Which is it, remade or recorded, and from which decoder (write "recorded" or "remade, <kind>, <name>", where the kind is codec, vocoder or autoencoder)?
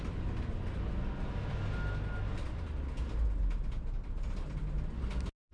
recorded